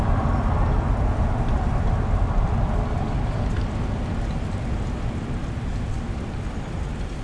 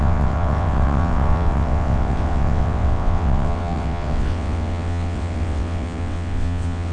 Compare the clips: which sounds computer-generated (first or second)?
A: second